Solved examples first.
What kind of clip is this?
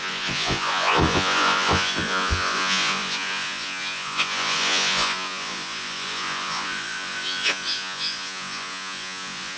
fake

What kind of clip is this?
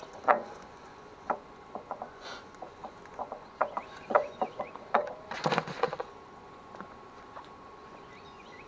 fake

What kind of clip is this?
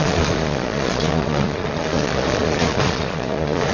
fake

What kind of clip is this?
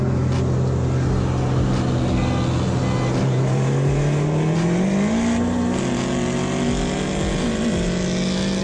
real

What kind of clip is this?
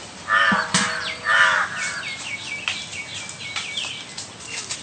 real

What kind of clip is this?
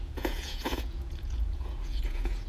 fake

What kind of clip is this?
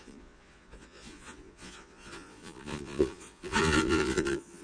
fake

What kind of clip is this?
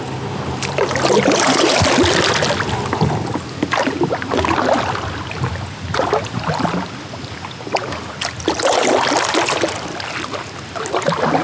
real